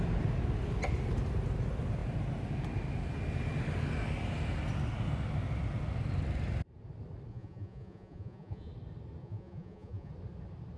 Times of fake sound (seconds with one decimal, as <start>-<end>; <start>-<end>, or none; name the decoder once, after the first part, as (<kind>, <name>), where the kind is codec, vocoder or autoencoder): 7.3-8.7 (vocoder, Vocos); 9.2-10.1